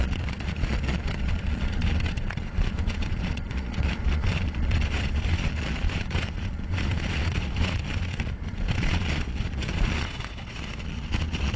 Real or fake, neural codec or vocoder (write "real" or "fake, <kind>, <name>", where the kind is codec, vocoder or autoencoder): fake, vocoder, Vocos